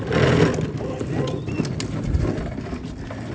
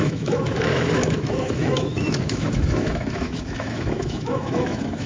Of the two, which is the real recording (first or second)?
first